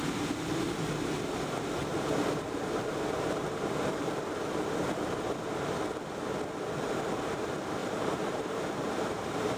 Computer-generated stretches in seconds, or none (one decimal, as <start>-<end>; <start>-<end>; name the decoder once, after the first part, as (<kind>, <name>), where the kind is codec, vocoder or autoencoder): 1.8-4.2 (vocoder, BigVGAN v2); 7.8-9.6